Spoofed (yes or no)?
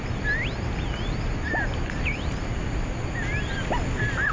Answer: no